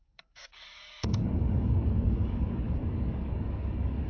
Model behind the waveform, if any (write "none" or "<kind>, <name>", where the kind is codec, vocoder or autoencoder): codec, DAC